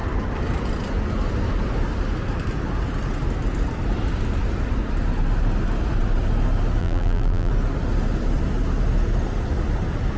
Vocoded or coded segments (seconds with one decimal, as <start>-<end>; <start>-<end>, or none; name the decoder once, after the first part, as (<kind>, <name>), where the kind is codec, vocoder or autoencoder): 6.8-7.5 (vocoder, BigVGAN v2)